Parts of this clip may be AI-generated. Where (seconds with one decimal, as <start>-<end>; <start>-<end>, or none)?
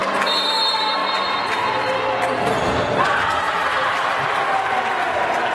1.0-4.3